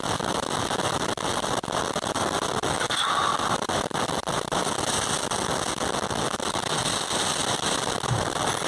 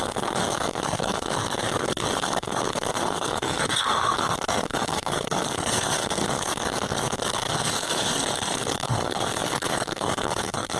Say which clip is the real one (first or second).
first